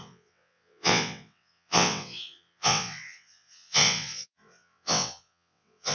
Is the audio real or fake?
fake